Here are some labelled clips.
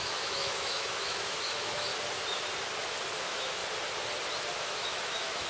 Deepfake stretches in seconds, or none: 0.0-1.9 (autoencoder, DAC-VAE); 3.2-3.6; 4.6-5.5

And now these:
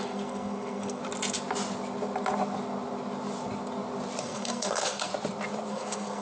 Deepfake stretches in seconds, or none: 0.0-1.0 (codec, SNAC); 4.2-5.1; 5.7-6.2

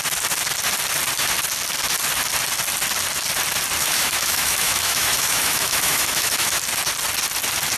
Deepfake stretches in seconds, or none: 3.8-6.6 (autoencoder, DAC-VAE)

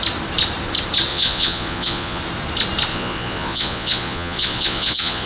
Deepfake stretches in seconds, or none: 1.1-2.2 (vocoder, Vocos); 2.9-5.3

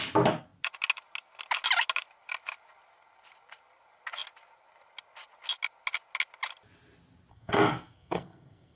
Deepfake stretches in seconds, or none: 7.3-8.8 (codec, SNAC)

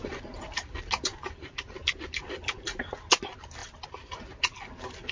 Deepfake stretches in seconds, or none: 1.1-1.9 (vocoder, BigVGAN v2)

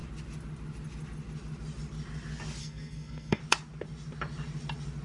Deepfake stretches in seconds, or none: 2.6-3.4 (codec, SNAC)

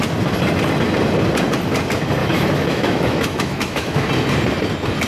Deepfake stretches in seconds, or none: 2.2-4.1 (autoencoder, DAC-VAE)